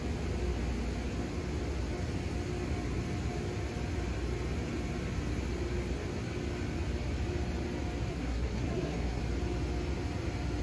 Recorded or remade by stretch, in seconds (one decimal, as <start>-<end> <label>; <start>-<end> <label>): 0.0-8.1 recorded; 8.1-9.2 remade; 9.2-10.6 recorded